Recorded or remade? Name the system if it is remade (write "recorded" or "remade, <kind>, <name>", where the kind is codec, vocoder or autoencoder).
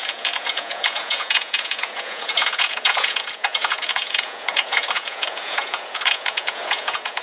remade, vocoder, Vocos